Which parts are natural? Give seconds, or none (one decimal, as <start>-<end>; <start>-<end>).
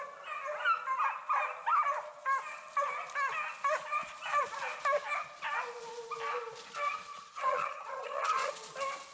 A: 0.0-7.1; 8.5-9.1